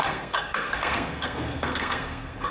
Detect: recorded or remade remade